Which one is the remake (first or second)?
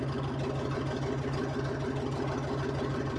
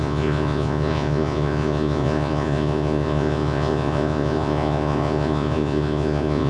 second